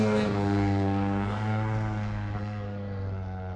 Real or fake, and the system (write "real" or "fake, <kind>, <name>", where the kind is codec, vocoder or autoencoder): fake, codec, SNAC